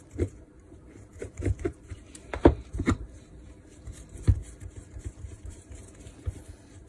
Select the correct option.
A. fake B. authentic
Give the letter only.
A